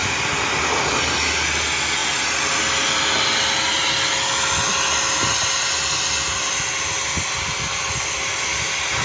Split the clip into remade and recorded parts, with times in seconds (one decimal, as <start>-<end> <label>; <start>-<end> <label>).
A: 0.0-9.0 recorded